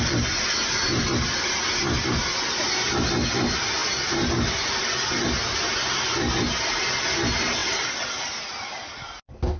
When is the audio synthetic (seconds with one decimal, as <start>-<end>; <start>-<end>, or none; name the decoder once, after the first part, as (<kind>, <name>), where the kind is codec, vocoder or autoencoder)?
none